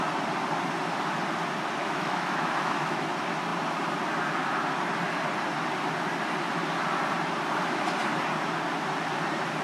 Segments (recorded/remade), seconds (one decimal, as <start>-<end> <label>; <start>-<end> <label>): 0.0-1.8 recorded; 1.8-3.1 remade; 3.1-9.6 recorded